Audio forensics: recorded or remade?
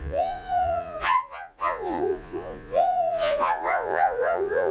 remade